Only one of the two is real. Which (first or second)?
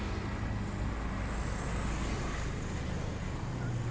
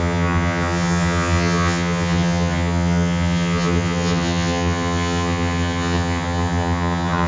first